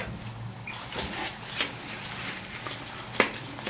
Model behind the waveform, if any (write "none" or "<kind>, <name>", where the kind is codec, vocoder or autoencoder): none